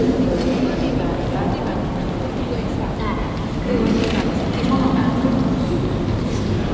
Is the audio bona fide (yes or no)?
yes